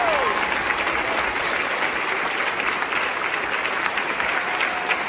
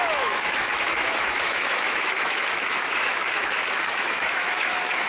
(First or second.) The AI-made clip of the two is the second